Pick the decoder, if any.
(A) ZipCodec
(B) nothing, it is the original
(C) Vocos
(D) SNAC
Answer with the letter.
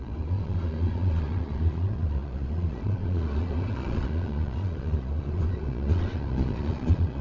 C